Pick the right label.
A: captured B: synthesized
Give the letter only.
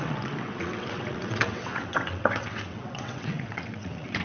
B